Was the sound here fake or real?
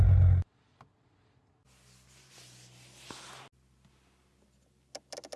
real